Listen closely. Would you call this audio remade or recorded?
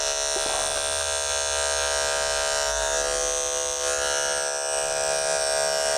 recorded